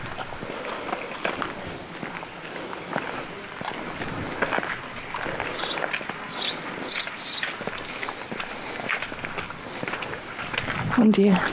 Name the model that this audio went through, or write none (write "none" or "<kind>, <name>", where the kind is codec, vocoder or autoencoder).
none